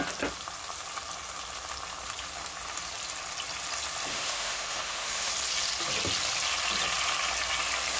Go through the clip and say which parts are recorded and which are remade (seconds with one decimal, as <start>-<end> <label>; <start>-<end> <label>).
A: 0.0-4.1 recorded; 4.1-5.3 remade; 5.3-8.0 recorded